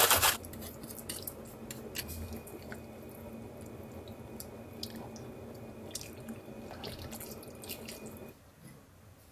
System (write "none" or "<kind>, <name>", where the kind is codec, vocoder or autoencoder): none